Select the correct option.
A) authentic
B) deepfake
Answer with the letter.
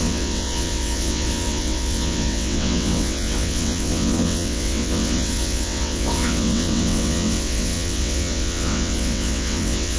B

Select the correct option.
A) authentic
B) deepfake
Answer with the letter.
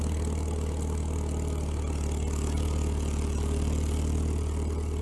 A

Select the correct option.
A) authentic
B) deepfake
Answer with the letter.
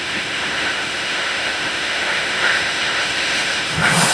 B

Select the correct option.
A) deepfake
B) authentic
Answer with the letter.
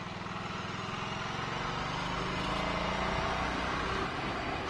B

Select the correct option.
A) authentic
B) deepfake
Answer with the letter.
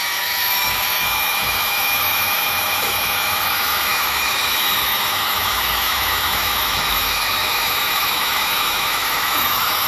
B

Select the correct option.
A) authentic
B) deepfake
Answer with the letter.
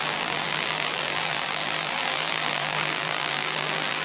B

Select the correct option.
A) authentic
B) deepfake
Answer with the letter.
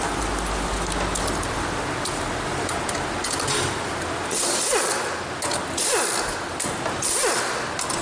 A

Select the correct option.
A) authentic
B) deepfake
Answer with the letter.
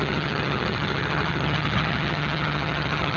B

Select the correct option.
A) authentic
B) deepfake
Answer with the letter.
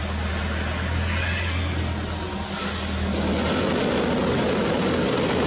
A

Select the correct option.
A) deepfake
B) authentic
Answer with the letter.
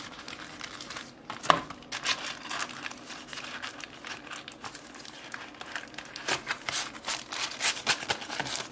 B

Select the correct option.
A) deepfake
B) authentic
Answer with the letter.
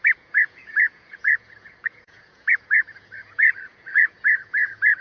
A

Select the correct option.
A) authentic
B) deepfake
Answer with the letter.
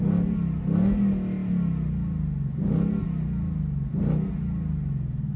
A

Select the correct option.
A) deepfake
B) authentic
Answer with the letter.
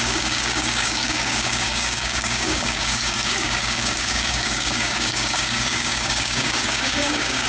A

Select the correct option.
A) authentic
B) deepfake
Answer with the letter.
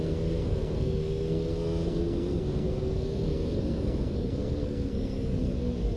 B